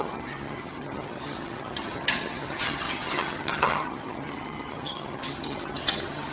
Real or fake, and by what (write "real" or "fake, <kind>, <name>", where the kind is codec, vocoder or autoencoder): fake, vocoder, HiFi-GAN